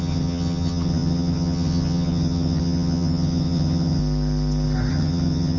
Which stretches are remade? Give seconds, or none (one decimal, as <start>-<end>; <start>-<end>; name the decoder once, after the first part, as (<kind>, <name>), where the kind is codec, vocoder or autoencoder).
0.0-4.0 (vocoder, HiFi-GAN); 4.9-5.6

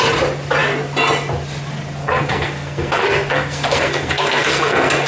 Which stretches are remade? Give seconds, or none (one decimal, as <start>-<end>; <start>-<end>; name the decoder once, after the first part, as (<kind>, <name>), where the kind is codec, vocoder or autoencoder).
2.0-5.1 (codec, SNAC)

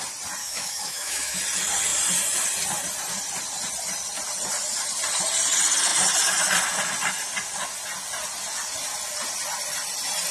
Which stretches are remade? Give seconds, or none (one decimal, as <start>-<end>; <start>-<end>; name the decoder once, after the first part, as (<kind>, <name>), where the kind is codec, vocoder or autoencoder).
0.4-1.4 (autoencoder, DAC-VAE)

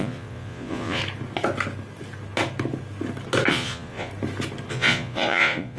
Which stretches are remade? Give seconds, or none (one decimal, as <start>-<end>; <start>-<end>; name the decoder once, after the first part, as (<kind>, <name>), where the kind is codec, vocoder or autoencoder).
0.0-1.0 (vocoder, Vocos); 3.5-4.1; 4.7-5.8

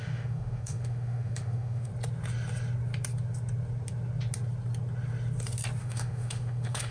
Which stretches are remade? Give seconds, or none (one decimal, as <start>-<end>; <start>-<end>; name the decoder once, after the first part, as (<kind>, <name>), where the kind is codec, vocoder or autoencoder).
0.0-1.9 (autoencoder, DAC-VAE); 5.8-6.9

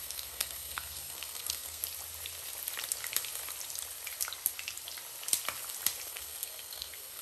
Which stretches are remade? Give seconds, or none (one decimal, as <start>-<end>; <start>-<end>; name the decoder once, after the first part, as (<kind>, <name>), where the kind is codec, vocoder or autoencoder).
0.0-1.8 (codec, SNAC); 6.1-7.2

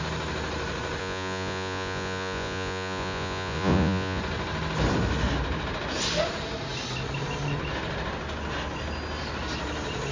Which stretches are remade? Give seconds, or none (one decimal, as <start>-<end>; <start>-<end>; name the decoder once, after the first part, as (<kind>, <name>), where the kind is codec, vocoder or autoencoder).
1.0-4.2 (vocoder, Vocos)

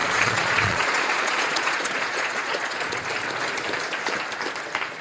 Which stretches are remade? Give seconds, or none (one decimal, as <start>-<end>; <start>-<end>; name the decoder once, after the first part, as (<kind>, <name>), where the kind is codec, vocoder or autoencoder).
0.0-3.0 (vocoder, Vocos)